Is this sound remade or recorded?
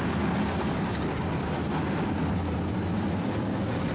recorded